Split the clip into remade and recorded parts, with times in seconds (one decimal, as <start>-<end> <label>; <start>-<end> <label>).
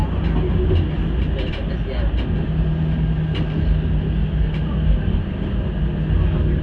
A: 0.0-6.6 recorded